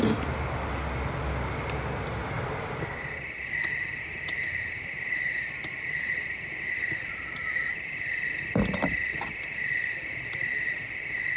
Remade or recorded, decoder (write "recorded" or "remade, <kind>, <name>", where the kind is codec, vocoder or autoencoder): recorded